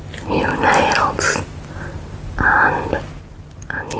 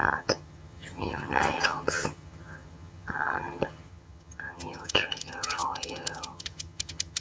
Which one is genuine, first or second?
first